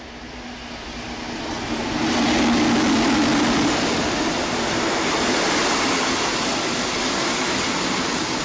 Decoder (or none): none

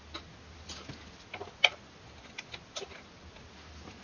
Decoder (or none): none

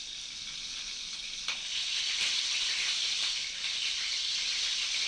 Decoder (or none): none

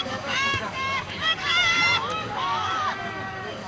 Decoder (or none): codec, DAC